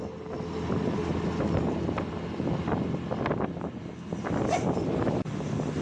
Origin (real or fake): real